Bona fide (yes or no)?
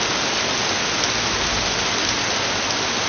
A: yes